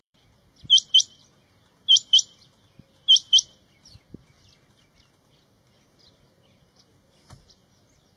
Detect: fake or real fake